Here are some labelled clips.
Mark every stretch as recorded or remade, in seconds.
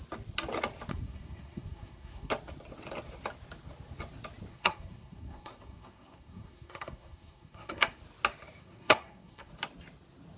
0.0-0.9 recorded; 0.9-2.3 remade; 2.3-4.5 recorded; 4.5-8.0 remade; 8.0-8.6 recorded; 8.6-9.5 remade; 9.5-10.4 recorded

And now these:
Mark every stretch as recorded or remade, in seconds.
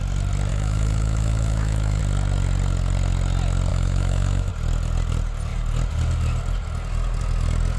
0.0-0.5 recorded; 0.5-2.0 remade; 2.0-3.7 recorded; 3.7-4.5 remade; 4.5-7.8 recorded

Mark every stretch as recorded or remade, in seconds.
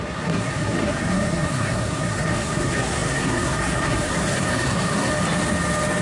0.0-5.1 remade; 5.1-6.0 recorded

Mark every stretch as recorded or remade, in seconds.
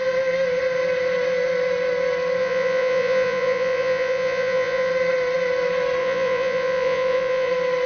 0.0-2.4 recorded; 2.4-4.9 remade; 4.9-6.0 recorded; 6.0-7.5 remade; 7.5-7.9 recorded